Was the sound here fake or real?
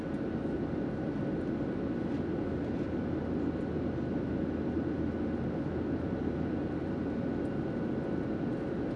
real